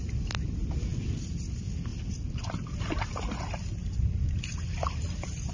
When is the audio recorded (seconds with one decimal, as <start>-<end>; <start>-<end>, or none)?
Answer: 0.0-1.9